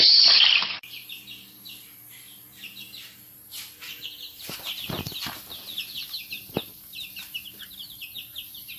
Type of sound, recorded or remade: remade